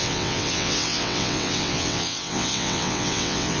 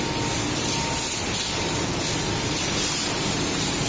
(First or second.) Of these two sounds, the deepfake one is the first